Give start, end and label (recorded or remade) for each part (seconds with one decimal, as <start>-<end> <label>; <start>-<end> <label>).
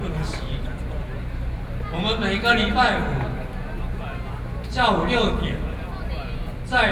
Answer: 0.0-6.9 recorded